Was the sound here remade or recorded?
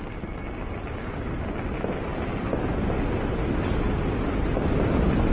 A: recorded